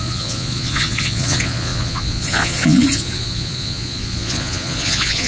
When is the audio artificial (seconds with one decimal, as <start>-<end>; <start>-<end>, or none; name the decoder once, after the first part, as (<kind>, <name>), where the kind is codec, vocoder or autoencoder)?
0.0-5.3 (vocoder, Vocos)